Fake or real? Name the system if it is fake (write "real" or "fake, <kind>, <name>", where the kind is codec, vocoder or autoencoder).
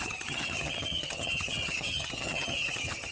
fake, vocoder, HiFi-GAN